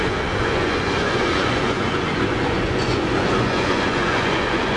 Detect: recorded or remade remade